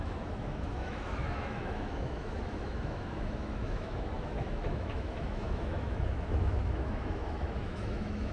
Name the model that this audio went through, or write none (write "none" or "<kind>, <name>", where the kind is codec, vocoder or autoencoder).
autoencoder, DAC-VAE